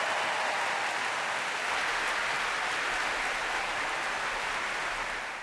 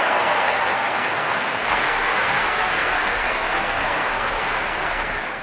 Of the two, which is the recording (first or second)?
first